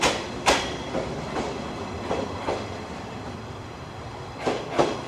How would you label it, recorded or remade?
remade